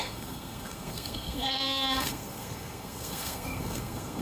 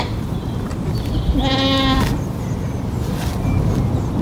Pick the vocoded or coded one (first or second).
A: first